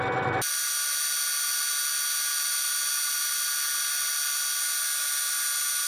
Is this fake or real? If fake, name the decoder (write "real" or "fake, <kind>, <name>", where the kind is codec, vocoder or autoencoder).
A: real